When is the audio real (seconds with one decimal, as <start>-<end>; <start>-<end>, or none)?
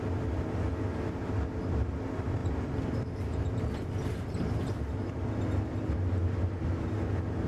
0.0-7.5